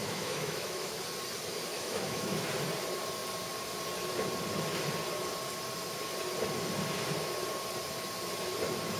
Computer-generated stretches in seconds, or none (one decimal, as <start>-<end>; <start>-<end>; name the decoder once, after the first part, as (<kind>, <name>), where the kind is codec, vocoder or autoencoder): 0.0-1.0 (autoencoder, DAC-VAE); 1.7-2.5

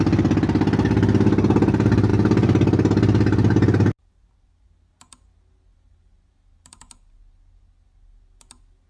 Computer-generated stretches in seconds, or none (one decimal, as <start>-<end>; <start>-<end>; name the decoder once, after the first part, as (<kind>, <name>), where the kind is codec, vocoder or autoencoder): none

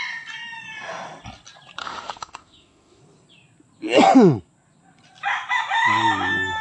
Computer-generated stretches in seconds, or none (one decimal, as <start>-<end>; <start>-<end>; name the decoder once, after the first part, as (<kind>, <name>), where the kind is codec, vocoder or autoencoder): 1.8-3.0 (autoencoder, DAC-VAE)

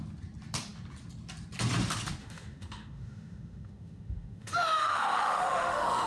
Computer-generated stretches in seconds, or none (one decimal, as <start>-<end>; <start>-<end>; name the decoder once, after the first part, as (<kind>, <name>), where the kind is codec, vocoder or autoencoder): 2.2-6.1 (autoencoder, DAC-VAE)

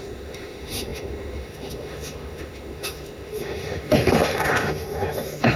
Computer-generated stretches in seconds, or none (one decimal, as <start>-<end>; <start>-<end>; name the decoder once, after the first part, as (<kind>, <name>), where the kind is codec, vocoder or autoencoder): 0.0-5.6 (autoencoder, DAC-VAE)

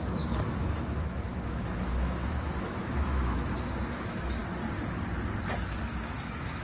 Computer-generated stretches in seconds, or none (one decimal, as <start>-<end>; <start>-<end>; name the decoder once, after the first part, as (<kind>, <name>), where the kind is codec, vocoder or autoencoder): 0.0-4.4 (autoencoder, DAC-VAE); 5.9-6.6